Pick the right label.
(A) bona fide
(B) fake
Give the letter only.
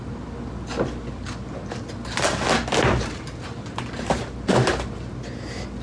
A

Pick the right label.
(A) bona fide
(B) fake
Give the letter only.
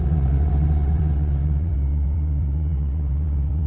B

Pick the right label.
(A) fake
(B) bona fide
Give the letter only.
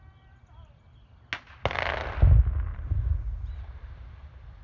B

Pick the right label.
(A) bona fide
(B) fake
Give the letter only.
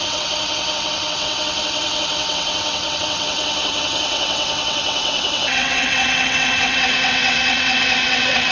B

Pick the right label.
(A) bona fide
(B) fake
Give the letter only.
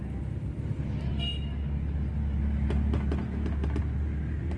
A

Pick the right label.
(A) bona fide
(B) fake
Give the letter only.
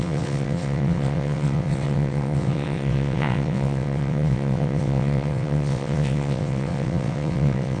B